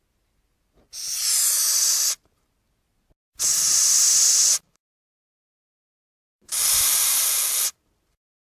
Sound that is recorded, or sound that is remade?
recorded